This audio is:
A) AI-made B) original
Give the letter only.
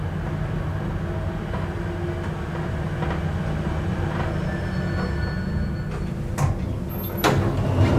B